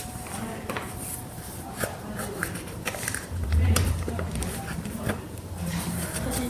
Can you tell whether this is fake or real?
fake